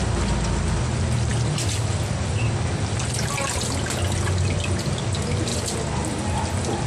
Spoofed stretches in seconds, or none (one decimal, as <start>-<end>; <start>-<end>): none